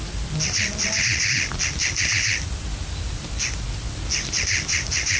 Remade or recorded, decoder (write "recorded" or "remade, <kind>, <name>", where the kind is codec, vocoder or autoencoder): recorded